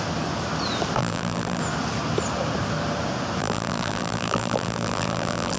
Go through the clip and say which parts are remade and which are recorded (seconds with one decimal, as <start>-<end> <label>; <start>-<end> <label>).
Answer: 0.0-1.0 recorded; 1.0-1.6 remade; 1.6-3.4 recorded; 3.4-5.6 remade